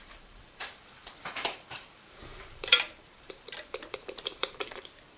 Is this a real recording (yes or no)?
no